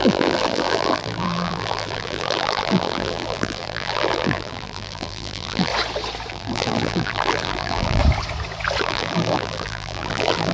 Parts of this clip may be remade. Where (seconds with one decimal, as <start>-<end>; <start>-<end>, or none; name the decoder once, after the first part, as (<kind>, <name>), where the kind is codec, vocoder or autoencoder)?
0.0-5.7 (vocoder, BigVGAN v2); 6.3-8.0; 8.8-10.5

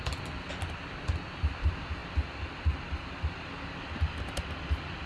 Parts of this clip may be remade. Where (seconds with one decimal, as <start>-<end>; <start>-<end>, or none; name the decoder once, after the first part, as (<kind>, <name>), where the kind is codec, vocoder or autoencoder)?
none

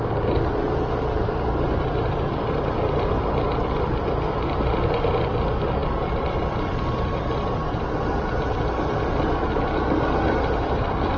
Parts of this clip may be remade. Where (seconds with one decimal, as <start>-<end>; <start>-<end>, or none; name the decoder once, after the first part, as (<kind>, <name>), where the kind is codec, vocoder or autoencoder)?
none

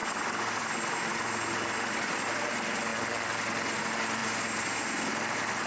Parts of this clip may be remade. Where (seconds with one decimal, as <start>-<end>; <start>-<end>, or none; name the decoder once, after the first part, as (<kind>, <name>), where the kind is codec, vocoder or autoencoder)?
none

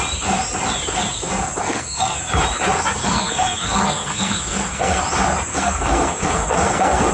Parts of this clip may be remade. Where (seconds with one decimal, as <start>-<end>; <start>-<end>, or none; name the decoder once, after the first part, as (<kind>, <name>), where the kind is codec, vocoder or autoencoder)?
1.6-2.2 (codec, SNAC); 3.0-5.0; 5.5-7.1

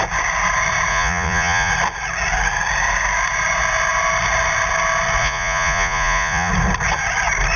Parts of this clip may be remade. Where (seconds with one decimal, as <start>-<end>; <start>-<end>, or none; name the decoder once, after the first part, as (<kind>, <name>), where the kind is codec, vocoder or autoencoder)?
0.9-1.7 (vocoder, Vocos); 5.2-6.5